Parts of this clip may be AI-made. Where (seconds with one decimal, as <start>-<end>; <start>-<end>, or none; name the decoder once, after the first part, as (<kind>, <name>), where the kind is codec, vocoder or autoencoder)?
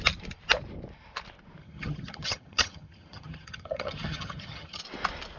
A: 1.6-4.8 (vocoder, HiFi-GAN)